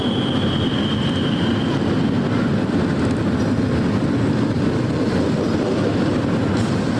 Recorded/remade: recorded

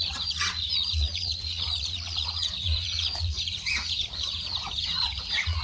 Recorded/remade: remade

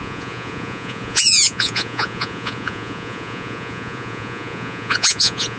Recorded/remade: remade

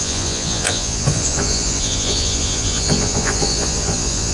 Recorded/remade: remade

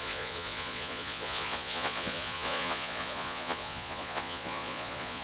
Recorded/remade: remade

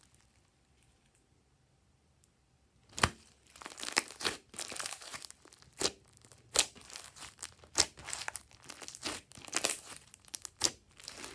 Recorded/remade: recorded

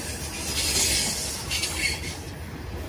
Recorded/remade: recorded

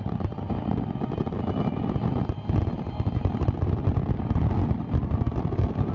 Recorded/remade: recorded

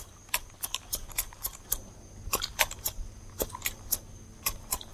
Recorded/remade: recorded